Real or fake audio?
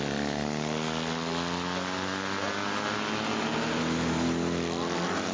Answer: real